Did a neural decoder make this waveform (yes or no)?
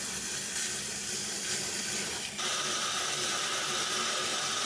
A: no